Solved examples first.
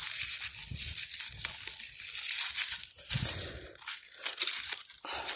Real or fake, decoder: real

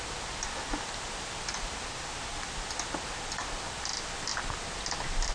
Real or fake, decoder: real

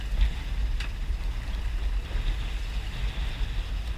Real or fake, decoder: real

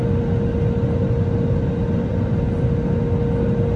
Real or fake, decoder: real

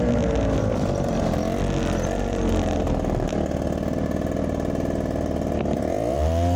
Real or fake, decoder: real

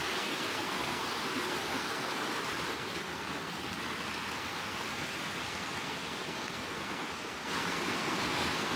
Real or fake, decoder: fake, codec, SNAC